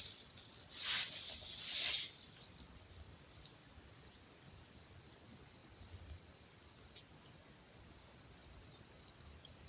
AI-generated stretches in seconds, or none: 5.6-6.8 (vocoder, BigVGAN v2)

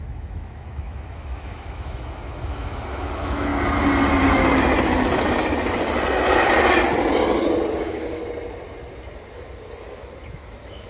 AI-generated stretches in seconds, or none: 0.0-3.5 (autoencoder, DAC-VAE); 7.8-8.2; 9.3-10.9